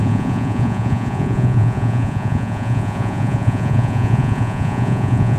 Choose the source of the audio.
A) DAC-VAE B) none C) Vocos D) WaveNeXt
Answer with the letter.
C